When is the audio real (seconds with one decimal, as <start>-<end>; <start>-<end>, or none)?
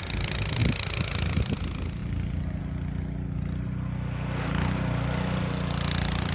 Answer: 0.0-6.3